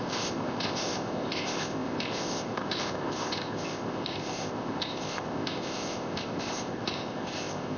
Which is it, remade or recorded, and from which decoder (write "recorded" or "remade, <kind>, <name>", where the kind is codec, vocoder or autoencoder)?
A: remade, codec, ZipCodec